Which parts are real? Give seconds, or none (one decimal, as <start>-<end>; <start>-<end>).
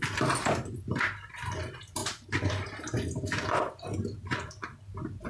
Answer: 0.0-5.3